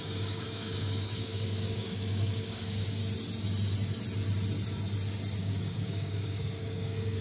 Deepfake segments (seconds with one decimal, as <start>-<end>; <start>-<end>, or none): 0.0-3.0; 5.4-7.2